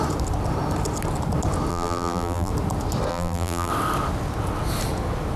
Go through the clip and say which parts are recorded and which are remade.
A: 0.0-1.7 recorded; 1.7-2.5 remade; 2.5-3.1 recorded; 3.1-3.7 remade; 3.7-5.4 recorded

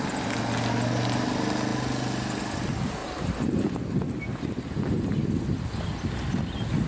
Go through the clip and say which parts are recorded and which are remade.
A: 0.0-6.9 recorded